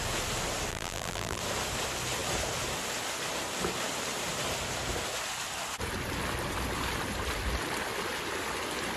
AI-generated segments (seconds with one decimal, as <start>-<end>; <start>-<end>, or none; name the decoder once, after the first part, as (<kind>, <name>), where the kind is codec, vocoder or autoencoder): 0.7-1.4 (vocoder, BigVGAN v2)